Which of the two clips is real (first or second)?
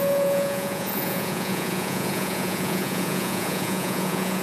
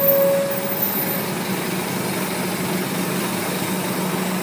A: second